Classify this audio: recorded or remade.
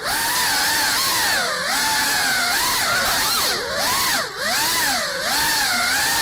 recorded